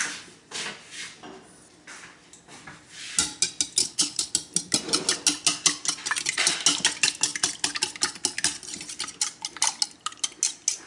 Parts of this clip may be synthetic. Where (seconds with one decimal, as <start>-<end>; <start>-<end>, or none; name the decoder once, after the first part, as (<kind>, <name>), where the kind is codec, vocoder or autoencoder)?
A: 3.8-4.3 (codec, HILCodec)